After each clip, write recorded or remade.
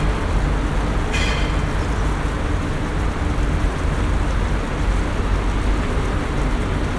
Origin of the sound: recorded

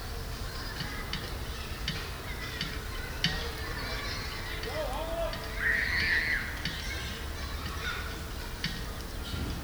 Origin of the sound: recorded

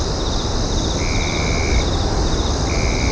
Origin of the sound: recorded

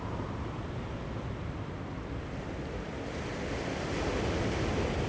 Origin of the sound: recorded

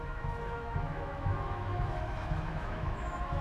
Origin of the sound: remade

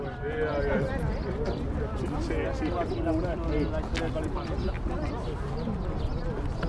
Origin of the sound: recorded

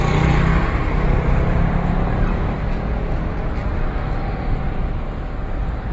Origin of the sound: recorded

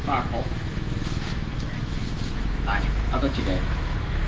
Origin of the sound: remade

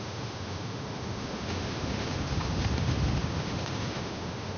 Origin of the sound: remade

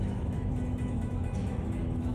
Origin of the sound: remade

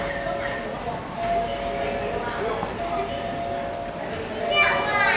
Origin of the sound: recorded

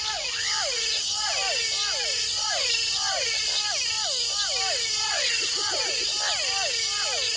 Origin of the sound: recorded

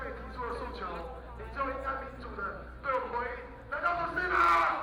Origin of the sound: recorded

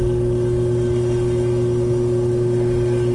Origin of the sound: recorded